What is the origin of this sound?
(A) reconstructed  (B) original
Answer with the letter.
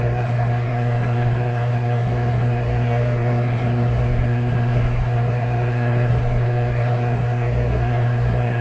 A